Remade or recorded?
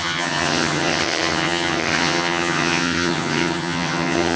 remade